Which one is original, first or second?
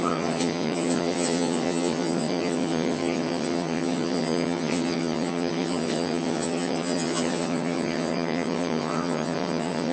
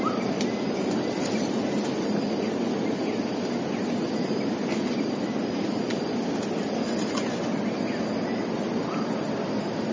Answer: second